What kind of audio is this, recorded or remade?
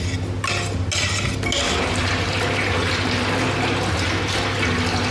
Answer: recorded